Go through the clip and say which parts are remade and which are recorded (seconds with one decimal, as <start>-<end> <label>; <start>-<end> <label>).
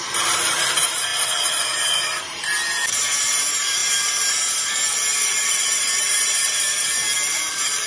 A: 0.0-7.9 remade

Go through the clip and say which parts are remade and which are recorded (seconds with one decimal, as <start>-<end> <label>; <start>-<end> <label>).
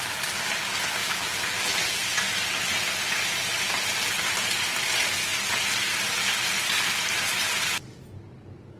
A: 0.0-1.0 recorded; 1.0-2.1 remade; 2.1-8.8 recorded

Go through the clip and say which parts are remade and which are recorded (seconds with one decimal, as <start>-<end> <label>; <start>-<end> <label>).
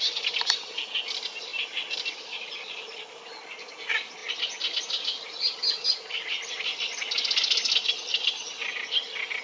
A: 0.0-1.5 recorded; 1.5-3.7 remade; 3.7-4.2 recorded; 4.2-4.8 remade; 4.8-8.6 recorded; 8.6-9.4 remade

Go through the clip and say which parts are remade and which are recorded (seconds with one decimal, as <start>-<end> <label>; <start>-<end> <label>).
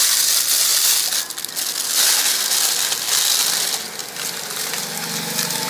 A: 0.0-5.7 recorded